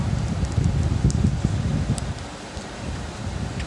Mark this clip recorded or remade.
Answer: recorded